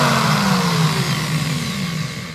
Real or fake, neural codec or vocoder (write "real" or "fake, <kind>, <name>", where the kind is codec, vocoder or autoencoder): real